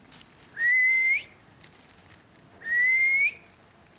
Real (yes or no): yes